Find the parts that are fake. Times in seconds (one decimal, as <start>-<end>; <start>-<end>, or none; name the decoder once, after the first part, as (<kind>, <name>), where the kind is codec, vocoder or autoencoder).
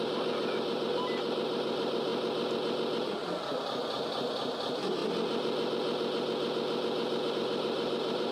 0.0-2.1 (vocoder, BigVGAN v2); 4.0-5.0; 7.3-8.3